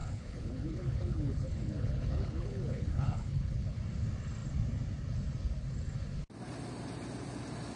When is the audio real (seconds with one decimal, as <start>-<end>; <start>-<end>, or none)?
3.8-7.8